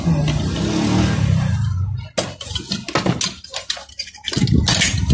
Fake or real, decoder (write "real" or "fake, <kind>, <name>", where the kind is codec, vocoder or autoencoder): real